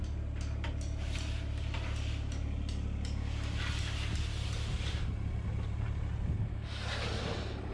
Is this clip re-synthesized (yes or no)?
no